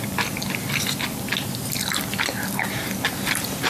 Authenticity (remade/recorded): recorded